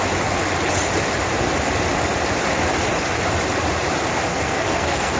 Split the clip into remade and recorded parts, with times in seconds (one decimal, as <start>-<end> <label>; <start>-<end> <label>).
0.0-4.3 recorded; 4.3-5.2 remade

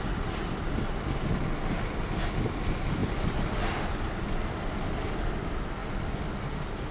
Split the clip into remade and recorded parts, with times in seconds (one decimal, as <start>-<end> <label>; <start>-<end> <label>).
0.0-6.9 recorded